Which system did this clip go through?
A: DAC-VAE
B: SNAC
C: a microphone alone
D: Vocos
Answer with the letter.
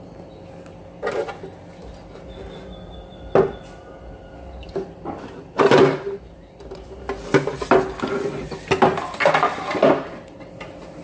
C